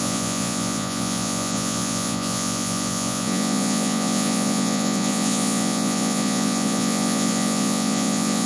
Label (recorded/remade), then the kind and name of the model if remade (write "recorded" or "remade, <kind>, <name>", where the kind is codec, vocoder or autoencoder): remade, vocoder, Vocos